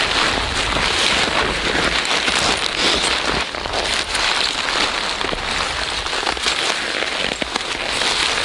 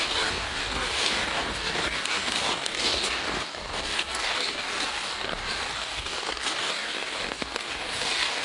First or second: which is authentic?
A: first